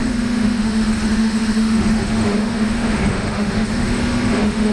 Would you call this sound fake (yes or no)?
yes